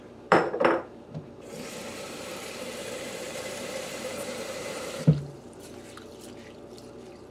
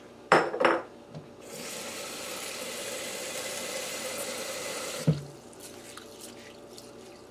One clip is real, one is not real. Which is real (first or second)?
second